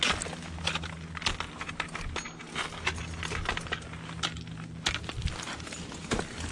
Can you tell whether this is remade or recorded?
recorded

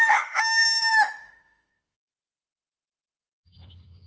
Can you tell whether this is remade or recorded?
remade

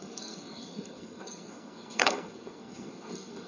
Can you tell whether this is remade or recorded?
remade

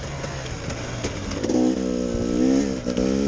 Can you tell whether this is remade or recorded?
recorded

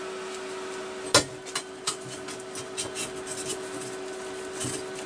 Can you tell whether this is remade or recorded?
recorded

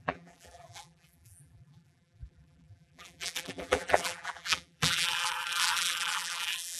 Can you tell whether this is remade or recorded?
remade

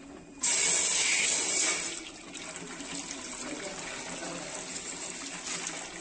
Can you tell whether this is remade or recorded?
recorded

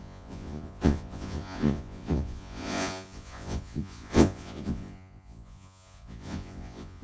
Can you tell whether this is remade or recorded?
remade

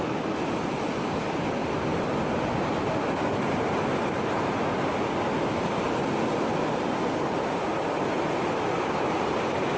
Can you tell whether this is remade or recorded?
recorded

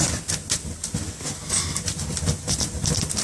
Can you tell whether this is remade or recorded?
recorded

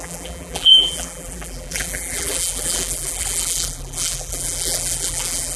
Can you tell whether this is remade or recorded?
remade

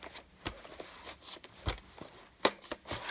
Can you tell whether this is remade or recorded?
recorded